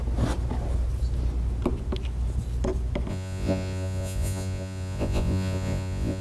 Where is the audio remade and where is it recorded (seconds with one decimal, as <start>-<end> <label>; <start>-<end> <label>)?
0.0-3.1 recorded; 3.1-6.2 remade